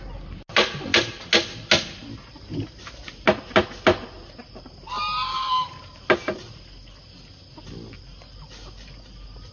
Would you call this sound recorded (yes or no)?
yes